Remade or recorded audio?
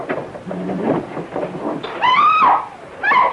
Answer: recorded